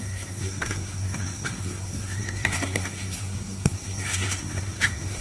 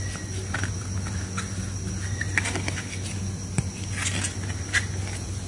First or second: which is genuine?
second